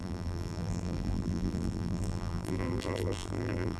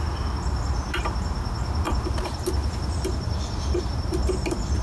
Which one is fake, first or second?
first